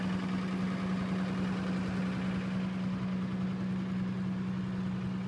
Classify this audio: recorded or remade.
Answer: recorded